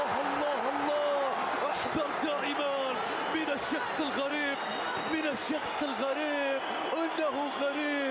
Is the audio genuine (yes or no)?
yes